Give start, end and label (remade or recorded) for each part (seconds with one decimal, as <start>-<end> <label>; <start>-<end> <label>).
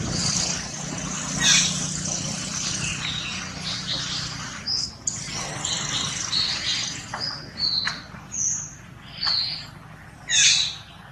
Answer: 0.0-11.1 recorded